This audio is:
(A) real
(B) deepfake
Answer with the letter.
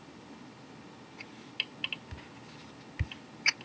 A